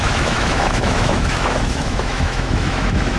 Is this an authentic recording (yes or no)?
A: no